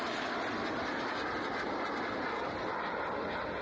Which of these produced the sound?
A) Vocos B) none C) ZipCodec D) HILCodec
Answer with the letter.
B